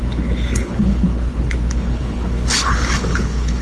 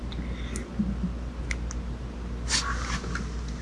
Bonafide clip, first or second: second